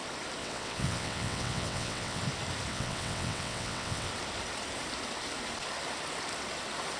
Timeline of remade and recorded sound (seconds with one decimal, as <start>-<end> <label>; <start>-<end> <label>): 0.0-0.4 recorded; 0.4-2.2 remade; 2.2-2.7 recorded; 2.7-4.1 remade; 4.1-7.0 recorded